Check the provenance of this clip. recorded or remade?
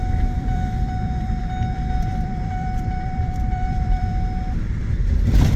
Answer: remade